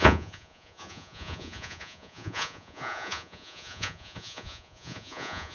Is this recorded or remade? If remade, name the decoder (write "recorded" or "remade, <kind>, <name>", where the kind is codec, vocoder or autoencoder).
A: remade, vocoder, Vocos